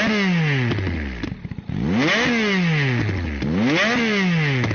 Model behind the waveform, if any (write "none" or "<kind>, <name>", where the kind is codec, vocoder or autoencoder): none